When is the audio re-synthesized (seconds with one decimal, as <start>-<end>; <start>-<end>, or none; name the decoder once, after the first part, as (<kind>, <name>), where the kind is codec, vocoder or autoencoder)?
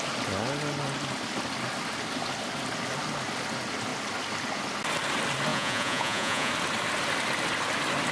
5.5-6.5 (vocoder, Vocos)